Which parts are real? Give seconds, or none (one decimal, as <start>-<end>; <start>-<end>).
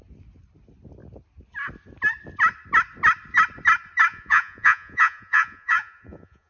0.0-4.1